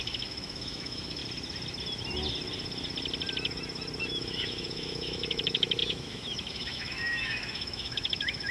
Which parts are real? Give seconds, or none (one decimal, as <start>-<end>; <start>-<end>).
1.2-4.0